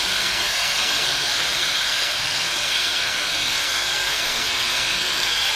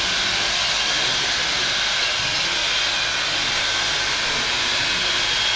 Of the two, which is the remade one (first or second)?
first